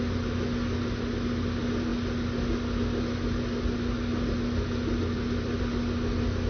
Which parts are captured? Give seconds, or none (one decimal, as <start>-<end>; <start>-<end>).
0.0-6.5